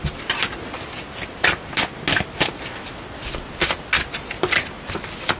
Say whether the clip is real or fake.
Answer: real